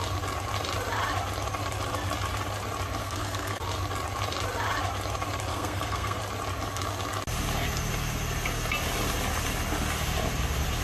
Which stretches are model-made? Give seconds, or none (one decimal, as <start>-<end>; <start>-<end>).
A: 3.0-3.6; 5.5-6.2